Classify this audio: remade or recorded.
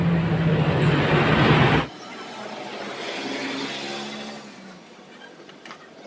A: recorded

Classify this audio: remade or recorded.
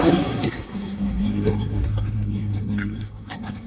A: remade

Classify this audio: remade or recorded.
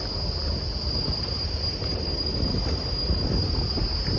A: recorded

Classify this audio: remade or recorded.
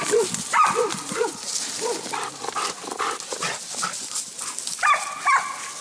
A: recorded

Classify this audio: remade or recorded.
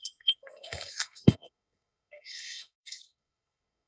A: remade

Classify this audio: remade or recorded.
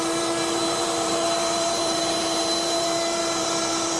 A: remade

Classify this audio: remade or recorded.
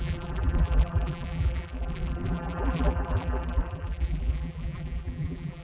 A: remade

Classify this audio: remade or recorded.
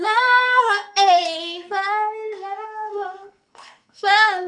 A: remade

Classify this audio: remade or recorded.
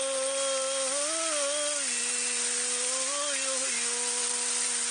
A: recorded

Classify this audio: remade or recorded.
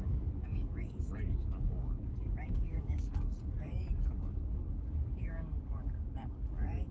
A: remade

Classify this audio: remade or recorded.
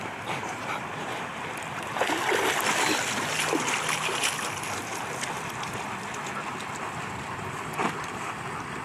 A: recorded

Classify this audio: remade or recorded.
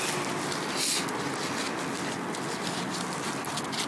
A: recorded